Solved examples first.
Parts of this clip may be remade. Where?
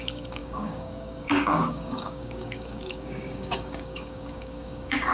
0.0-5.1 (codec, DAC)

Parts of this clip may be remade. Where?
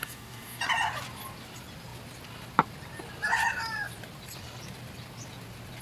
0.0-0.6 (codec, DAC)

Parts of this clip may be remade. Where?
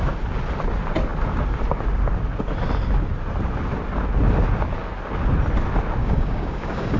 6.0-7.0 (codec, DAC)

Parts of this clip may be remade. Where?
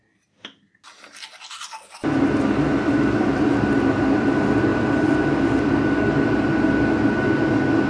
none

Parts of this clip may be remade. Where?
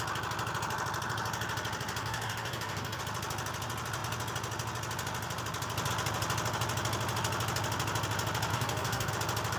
2.0-3.0 (codec, DAC); 8.5-9.1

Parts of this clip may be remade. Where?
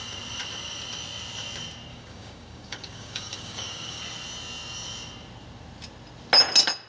1.9-4.0 (codec, DAC)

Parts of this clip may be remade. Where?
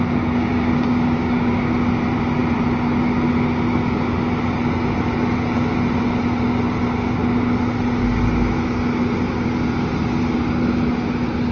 0.5-1.5 (codec, DAC)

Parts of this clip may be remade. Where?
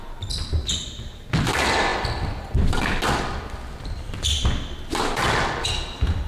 none